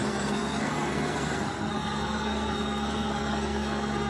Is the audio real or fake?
fake